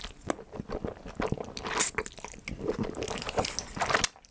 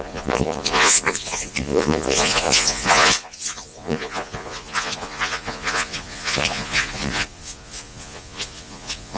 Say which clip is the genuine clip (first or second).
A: first